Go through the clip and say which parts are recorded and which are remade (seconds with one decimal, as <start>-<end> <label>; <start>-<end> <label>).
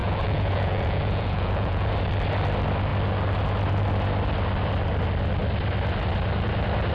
0.0-1.9 remade; 1.9-6.9 recorded